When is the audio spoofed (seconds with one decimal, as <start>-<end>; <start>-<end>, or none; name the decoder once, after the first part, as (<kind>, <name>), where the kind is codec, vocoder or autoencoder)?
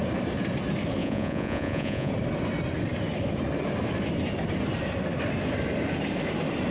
1.0-2.1 (vocoder, Vocos)